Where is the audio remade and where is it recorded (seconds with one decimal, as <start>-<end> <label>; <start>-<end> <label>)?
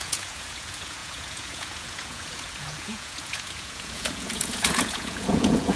0.0-5.8 remade